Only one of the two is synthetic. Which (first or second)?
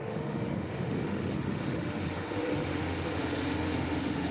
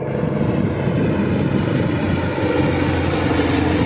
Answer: first